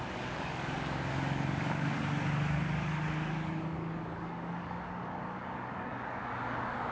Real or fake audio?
fake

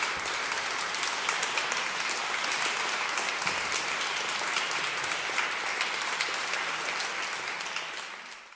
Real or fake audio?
real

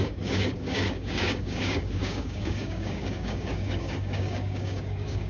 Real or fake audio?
fake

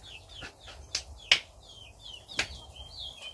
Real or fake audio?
real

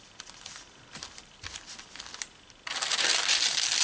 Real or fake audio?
real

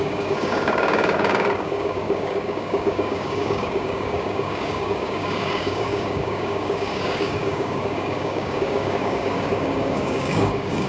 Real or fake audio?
fake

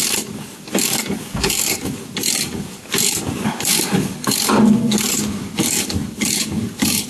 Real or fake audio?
fake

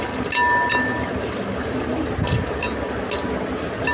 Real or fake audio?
real